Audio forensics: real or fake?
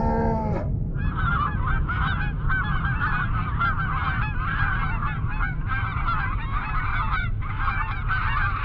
fake